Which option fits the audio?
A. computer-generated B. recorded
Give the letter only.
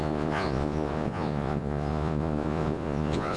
A